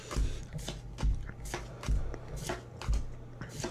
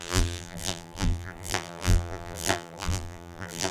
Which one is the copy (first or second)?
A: second